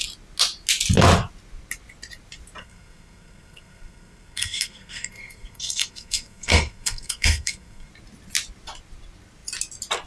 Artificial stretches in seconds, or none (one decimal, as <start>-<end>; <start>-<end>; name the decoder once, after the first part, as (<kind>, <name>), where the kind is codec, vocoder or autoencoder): 2.6-7.9 (codec, SNAC)